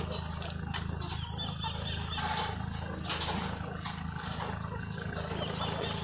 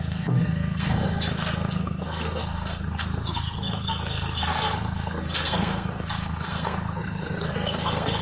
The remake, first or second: second